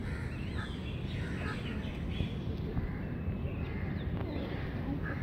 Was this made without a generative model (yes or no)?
yes